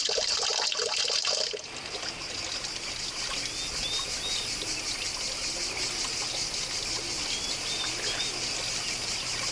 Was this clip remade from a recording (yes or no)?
no